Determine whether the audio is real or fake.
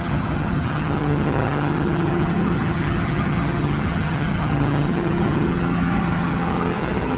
fake